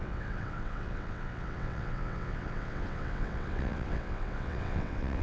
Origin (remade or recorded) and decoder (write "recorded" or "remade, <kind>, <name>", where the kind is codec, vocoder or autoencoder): remade, vocoder, WaveNeXt